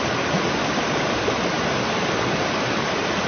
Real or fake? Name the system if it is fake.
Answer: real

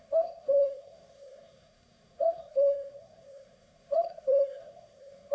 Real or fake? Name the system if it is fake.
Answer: fake, codec, SNAC